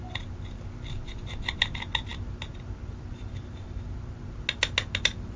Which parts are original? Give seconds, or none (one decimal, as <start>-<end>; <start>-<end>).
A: 0.0-5.4